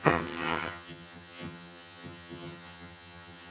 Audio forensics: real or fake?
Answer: fake